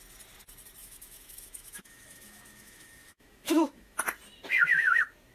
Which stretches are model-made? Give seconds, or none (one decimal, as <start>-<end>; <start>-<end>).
0.8-4.0